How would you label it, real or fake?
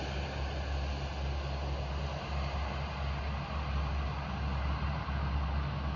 real